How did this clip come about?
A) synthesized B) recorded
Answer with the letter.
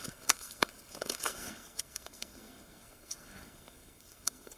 A